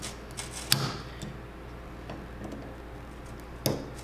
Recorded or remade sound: recorded